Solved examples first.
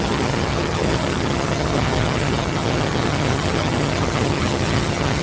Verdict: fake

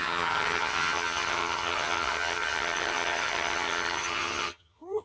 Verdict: fake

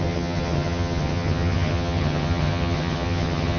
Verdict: fake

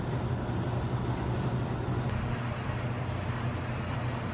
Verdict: real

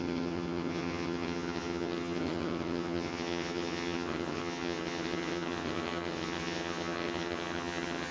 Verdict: fake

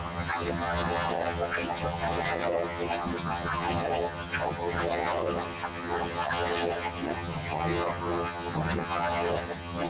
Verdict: fake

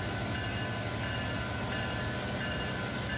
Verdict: real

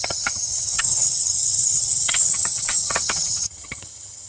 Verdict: fake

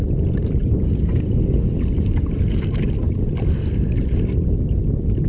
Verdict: real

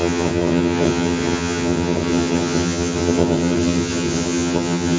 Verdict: fake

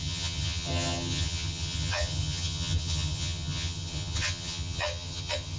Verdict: fake